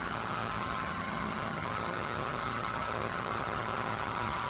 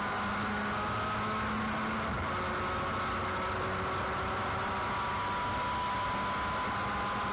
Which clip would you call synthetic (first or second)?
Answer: first